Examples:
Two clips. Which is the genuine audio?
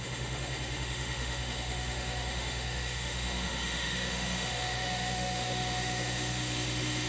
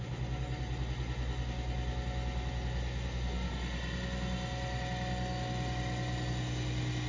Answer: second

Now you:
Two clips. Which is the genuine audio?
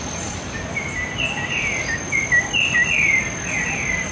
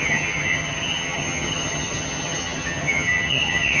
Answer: first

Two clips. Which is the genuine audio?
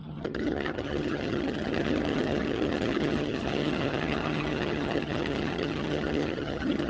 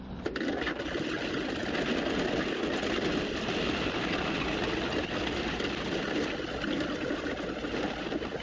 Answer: second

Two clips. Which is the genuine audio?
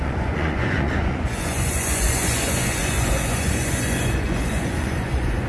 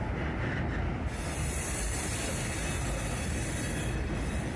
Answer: second